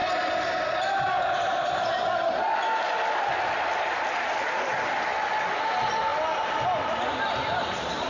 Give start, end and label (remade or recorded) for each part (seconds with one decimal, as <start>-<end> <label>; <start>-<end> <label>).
0.0-8.1 recorded